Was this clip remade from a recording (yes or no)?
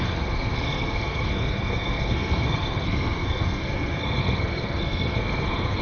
yes